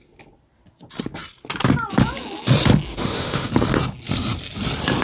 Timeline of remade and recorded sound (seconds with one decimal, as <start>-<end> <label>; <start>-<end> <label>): 0.0-2.9 recorded; 2.9-3.5 remade; 3.5-5.0 recorded